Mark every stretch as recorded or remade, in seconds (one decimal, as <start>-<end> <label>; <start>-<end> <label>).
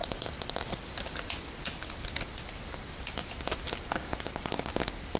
0.0-0.8 remade; 0.8-2.8 recorded; 2.8-5.2 remade